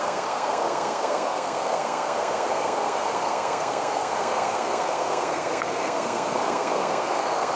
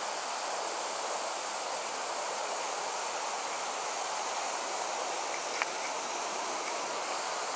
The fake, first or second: first